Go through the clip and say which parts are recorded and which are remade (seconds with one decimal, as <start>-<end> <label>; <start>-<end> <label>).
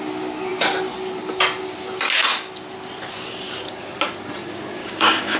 0.0-4.8 recorded; 4.8-5.4 remade